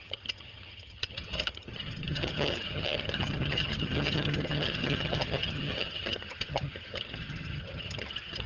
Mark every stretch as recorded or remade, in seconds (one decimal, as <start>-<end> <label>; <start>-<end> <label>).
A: 0.0-8.5 remade

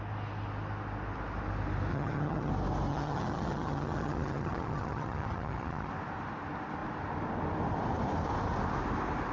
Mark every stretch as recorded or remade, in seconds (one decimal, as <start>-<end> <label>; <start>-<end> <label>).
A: 0.0-1.9 recorded; 1.9-2.5 remade; 2.5-2.9 recorded; 2.9-5.9 remade; 5.9-9.3 recorded

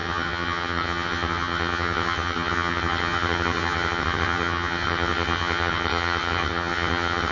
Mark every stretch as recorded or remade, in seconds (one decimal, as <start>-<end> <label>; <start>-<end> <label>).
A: 0.0-7.3 remade